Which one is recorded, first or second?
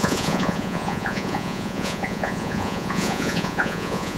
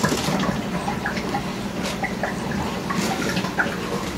second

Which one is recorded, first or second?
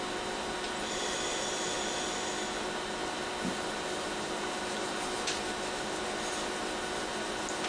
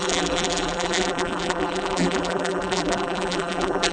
first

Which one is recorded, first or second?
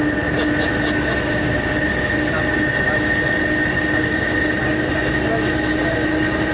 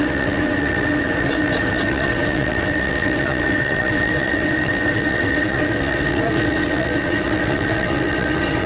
first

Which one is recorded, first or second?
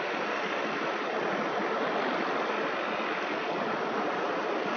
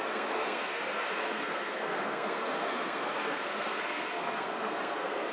first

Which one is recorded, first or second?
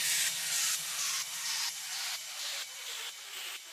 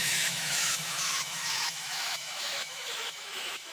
first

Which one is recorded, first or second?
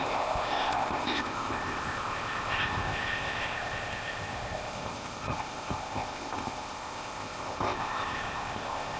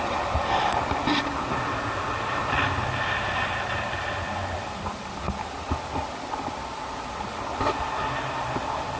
second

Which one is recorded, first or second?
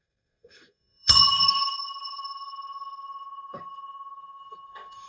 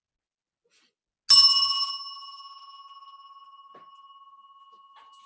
second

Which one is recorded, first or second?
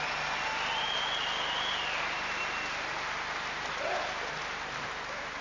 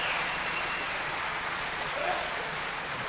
first